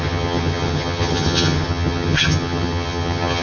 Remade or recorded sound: remade